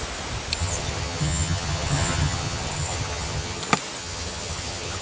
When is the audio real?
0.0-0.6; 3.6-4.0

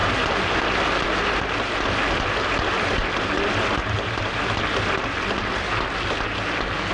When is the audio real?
0.5-3.8; 4.4-6.9

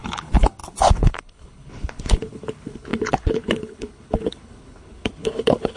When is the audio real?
none

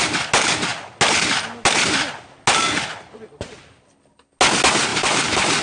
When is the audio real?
0.0-4.9